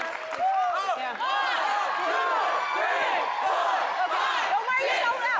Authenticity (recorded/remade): recorded